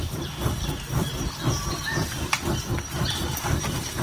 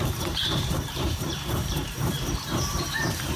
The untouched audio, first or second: first